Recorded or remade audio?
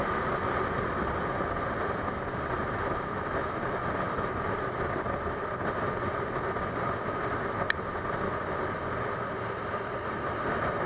recorded